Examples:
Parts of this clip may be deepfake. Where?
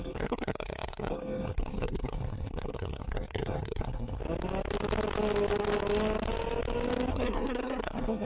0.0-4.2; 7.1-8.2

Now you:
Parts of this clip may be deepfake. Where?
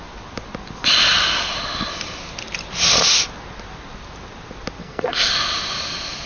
4.8-5.3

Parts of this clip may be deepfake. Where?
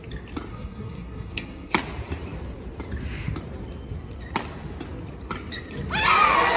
0.5-1.7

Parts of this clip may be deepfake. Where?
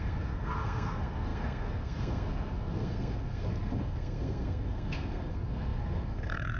0.0-6.6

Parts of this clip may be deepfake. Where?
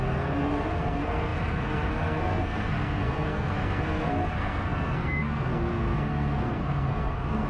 0.0-7.5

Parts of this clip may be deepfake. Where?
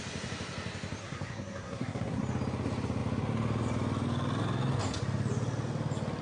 1.0-2.2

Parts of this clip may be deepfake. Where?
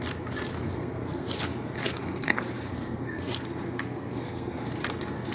0.6-1.3; 1.8-4.6